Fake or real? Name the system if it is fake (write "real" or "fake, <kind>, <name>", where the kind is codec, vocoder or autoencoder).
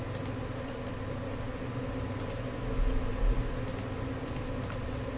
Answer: real